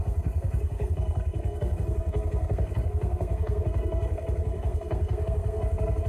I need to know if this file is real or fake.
fake